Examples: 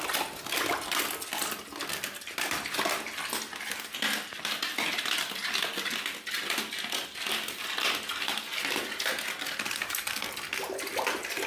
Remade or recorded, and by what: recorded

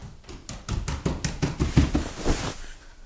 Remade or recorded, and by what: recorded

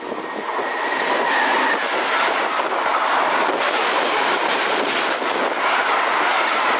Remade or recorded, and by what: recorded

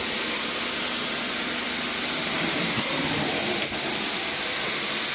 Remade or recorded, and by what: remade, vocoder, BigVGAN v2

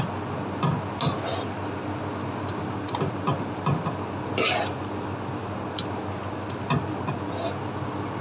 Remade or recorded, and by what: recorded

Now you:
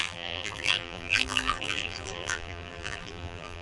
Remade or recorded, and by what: remade, vocoder, BigVGAN v2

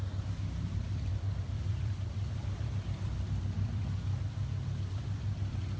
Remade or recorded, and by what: remade, vocoder, BigVGAN v2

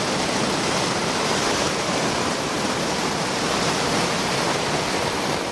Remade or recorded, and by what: remade, vocoder, BigVGAN v2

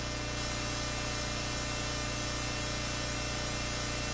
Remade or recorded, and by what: recorded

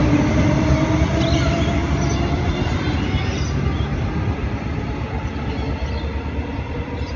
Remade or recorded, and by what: recorded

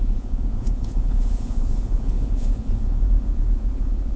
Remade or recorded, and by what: remade, vocoder, Vocos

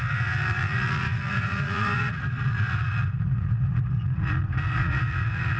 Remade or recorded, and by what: remade, vocoder, Vocos